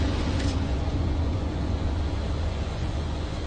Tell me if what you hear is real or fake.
fake